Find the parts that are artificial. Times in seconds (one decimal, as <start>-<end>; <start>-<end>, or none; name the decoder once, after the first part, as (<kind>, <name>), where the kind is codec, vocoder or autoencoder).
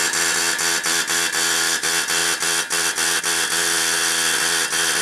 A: none